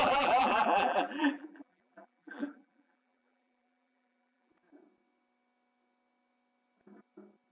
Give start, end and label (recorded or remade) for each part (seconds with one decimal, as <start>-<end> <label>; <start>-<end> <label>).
0.0-4.5 remade; 4.5-7.5 recorded